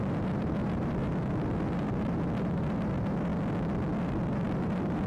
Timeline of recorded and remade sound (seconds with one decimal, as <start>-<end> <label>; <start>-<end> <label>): 0.0-3.3 remade; 3.3-4.0 recorded; 4.0-5.1 remade